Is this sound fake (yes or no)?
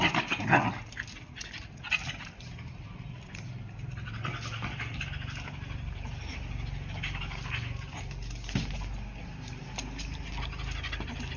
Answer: no